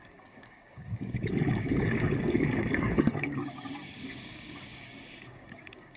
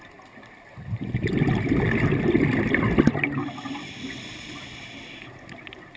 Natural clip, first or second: second